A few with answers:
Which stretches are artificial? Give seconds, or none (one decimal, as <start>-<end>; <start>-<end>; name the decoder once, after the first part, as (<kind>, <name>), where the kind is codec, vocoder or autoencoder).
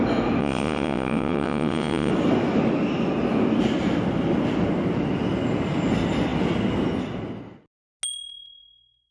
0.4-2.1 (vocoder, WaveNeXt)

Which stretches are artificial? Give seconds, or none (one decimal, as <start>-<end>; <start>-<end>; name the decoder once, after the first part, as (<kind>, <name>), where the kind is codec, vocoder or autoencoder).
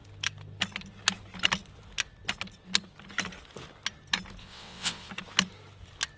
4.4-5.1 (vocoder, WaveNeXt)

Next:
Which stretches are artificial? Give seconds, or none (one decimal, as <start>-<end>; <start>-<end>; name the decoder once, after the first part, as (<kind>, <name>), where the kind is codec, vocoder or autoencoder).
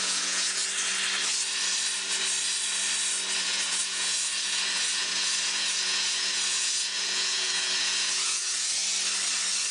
0.0-0.6 (vocoder, Vocos); 3.4-8.8